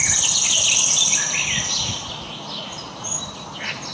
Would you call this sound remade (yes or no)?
no